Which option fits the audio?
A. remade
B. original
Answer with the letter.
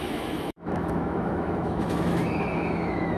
A